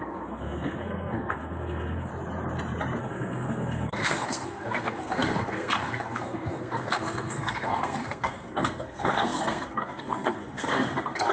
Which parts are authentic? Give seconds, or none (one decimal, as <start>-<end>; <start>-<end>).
2.1-3.0